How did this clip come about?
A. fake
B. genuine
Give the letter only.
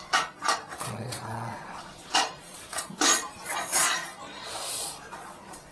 A